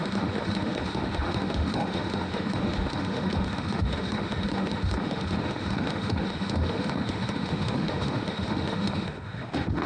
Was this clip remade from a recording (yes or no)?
yes